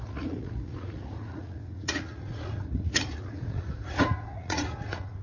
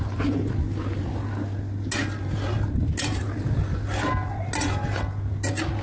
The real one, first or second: second